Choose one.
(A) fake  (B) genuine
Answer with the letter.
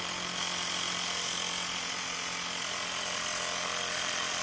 B